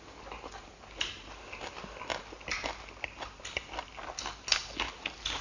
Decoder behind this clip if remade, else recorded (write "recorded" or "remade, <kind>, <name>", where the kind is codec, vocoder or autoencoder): recorded